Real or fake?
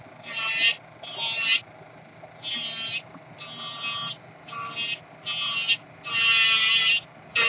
real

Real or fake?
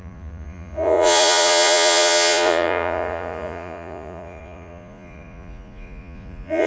fake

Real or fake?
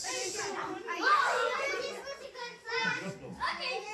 real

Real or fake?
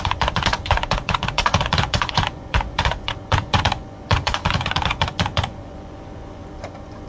fake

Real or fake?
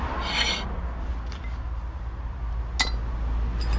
real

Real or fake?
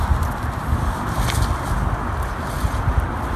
real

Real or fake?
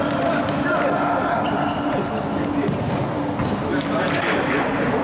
real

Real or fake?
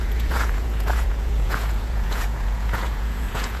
fake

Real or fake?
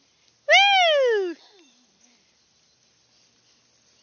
real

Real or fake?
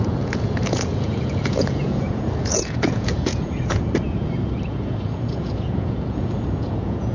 fake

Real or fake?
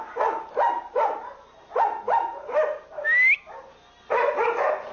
real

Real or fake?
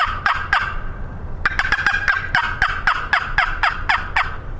real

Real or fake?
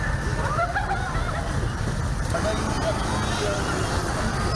real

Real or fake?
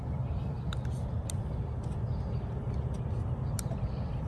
real